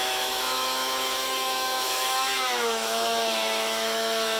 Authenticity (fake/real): fake